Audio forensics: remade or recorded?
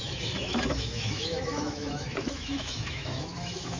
remade